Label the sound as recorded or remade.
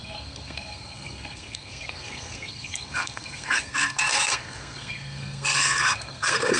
remade